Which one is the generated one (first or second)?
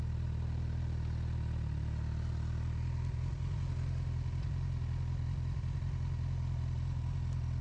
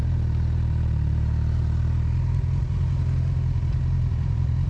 second